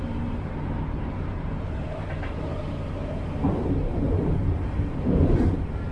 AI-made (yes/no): yes